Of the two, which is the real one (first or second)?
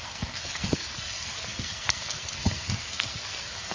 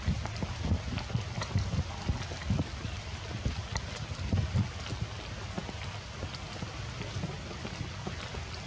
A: second